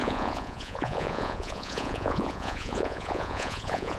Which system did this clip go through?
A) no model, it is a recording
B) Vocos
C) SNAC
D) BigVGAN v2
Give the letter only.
B